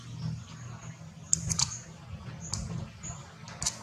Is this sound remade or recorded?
recorded